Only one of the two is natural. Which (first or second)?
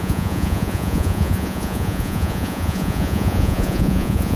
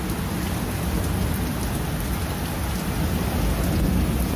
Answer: second